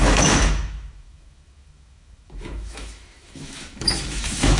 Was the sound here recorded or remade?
remade